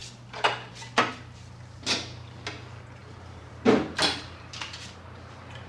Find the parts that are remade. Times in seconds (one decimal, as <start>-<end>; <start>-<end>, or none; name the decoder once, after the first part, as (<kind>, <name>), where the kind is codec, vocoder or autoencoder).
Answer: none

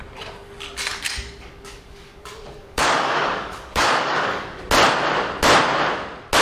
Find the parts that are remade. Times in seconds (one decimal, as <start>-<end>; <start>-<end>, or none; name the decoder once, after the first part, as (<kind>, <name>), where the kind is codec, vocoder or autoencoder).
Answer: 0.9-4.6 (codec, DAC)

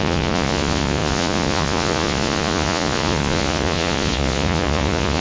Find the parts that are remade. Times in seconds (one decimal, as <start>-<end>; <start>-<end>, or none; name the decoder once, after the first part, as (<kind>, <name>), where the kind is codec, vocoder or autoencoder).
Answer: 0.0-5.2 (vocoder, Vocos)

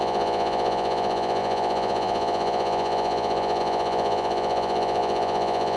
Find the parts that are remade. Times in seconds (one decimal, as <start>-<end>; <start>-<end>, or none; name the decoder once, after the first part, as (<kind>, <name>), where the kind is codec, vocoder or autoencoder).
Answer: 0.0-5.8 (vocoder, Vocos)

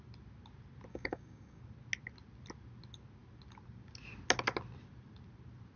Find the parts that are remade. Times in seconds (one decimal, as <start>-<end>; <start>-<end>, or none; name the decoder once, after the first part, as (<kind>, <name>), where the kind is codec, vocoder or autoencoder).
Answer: 0.9-1.6 (codec, DAC)